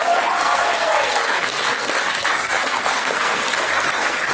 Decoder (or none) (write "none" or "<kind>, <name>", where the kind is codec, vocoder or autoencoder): codec, SNAC